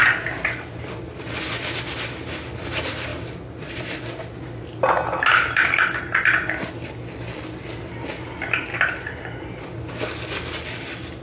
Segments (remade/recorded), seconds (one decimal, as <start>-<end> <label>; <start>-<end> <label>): 0.0-11.2 recorded